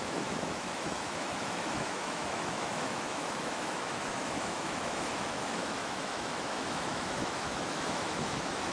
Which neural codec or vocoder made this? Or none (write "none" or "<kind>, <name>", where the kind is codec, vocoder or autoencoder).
autoencoder, DAC-VAE